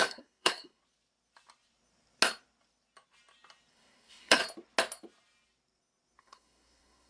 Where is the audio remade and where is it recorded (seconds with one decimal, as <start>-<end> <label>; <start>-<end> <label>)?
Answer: 0.0-0.8 remade; 0.8-3.7 recorded; 3.7-4.4 remade; 4.4-6.2 recorded; 6.2-7.1 remade